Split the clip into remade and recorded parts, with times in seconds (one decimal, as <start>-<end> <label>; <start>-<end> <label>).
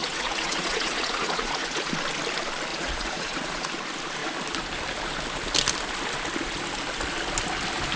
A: 0.0-1.9 remade; 1.9-2.7 recorded; 2.7-3.7 remade; 3.7-8.0 recorded